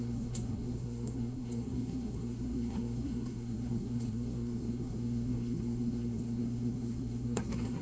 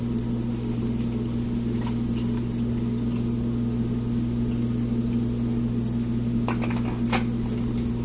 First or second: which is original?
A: second